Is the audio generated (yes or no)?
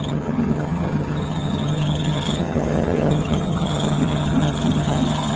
yes